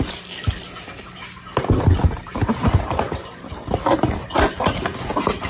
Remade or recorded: recorded